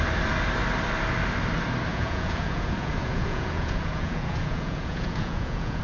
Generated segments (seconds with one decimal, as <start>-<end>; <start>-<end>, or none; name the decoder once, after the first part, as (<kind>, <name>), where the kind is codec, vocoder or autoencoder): 1.9-5.8 (vocoder, Vocos)